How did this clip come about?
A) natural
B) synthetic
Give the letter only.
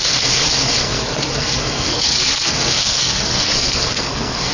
B